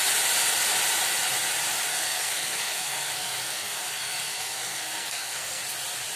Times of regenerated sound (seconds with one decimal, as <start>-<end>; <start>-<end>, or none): 1.9-5.6